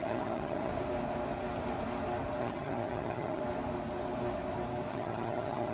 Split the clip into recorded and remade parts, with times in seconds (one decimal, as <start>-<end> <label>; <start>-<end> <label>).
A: 0.0-0.7 remade; 0.7-2.4 recorded; 2.4-3.4 remade; 3.4-4.9 recorded; 4.9-5.7 remade